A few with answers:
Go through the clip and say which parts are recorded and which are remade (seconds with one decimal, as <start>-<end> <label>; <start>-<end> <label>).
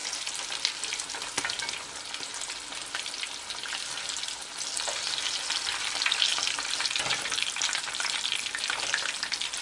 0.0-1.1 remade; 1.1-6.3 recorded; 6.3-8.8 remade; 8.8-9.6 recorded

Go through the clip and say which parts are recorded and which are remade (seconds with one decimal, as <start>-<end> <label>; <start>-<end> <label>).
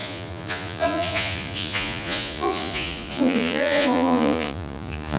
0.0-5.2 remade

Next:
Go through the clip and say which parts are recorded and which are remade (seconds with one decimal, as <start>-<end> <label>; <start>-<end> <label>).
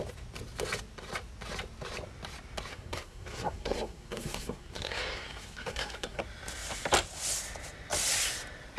0.0-2.7 recorded; 2.7-6.2 remade; 6.2-8.8 recorded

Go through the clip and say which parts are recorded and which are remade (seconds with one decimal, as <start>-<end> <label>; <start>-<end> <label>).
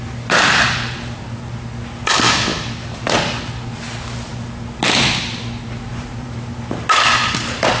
0.0-2.5 recorded; 2.5-3.5 remade; 3.5-5.9 recorded; 5.9-6.7 remade; 6.7-7.8 recorded